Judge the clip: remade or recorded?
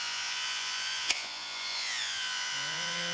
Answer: remade